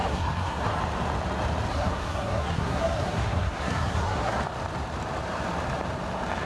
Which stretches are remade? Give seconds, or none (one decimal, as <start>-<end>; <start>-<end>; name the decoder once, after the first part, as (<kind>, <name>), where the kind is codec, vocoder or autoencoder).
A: 0.0-0.8 (codec, SNAC); 1.7-4.4